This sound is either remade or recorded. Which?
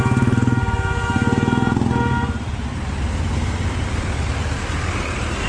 recorded